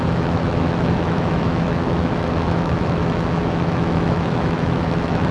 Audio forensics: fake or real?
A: fake